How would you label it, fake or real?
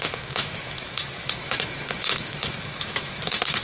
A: fake